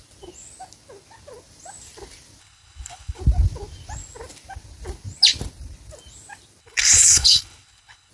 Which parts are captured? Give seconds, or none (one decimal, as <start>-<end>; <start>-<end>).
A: 0.0-2.4; 3.2-6.6